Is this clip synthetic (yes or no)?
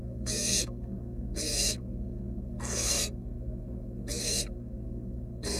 yes